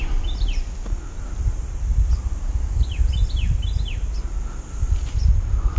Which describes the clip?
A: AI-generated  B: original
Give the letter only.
B